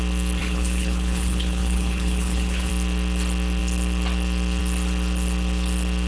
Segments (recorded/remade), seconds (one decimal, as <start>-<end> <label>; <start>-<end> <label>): 0.0-0.4 recorded; 0.4-2.7 remade; 2.7-6.1 recorded